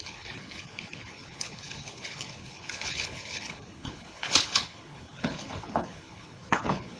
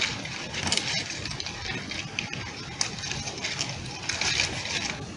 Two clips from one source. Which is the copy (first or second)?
first